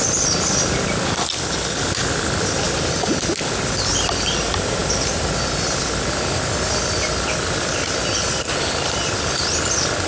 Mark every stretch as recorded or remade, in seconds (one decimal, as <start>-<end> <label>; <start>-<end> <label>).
0.0-10.1 recorded